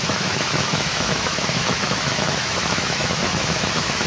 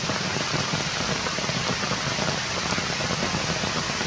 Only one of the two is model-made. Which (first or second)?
first